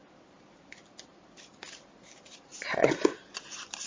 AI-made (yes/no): no